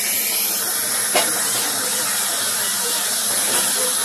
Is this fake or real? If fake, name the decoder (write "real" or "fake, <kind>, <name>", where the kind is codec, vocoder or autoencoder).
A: real